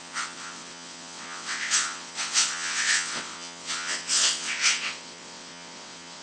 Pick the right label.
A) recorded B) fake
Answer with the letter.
B